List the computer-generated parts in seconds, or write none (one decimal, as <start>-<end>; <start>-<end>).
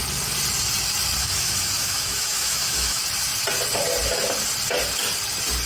1.2-3.0